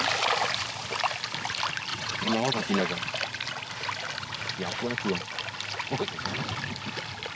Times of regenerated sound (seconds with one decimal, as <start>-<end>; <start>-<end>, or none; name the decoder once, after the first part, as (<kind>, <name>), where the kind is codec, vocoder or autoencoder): 1.9-2.8 (vocoder, WaveNeXt)